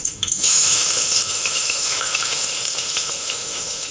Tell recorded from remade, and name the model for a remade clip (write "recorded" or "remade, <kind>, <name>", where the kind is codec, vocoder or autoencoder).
remade, autoencoder, DAC-VAE